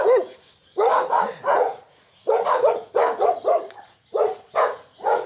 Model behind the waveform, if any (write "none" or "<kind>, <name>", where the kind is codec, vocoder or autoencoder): vocoder, Vocos